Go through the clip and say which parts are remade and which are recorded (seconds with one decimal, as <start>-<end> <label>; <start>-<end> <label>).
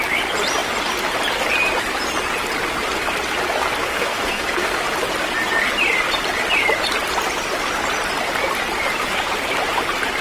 0.0-3.9 recorded; 3.9-4.8 remade; 4.8-10.2 recorded